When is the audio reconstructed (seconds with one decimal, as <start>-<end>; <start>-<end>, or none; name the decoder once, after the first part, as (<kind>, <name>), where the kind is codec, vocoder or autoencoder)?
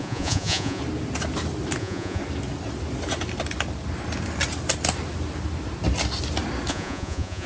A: 0.0-0.8 (vocoder, Vocos); 1.8-2.2; 6.7-7.5